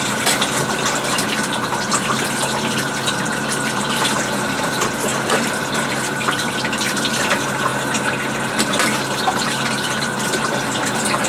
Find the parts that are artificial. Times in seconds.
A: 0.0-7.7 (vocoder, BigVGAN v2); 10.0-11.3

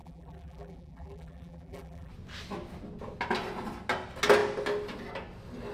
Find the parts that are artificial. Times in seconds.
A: 0.0-2.1 (vocoder, BigVGAN v2)

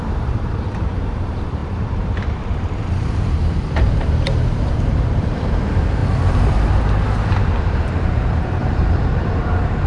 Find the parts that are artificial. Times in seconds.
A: 0.0-6.0 (vocoder, BigVGAN v2); 7.3-9.9

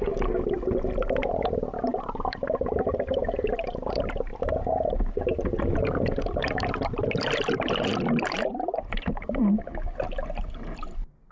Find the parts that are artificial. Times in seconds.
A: 0.0-4.3 (vocoder, BigVGAN v2); 5.0-11.3